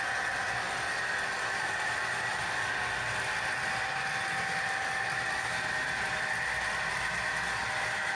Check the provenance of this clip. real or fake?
real